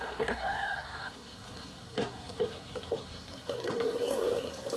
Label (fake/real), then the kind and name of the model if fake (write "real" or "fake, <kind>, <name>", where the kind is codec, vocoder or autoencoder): fake, codec, SNAC